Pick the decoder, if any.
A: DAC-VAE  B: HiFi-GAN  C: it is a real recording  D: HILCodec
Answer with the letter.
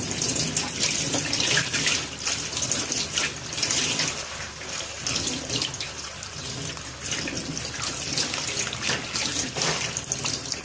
C